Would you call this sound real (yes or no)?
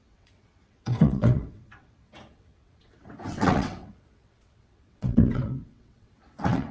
no